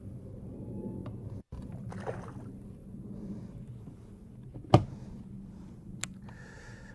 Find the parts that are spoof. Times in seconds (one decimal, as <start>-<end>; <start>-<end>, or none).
none